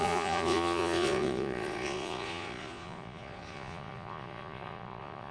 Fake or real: fake